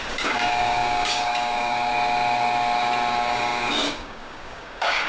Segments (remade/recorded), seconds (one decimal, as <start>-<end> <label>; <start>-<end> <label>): 0.0-1.9 remade; 1.9-3.1 recorded; 3.1-5.1 remade